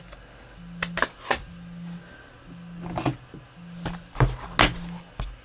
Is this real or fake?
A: real